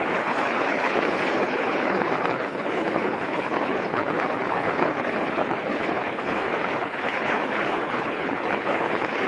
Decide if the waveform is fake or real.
fake